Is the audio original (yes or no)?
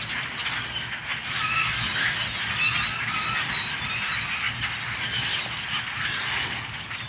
yes